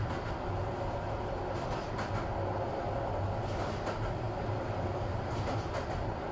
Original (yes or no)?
yes